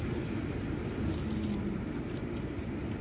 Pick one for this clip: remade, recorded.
recorded